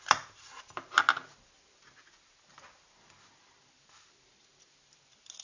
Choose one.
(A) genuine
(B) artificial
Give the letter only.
A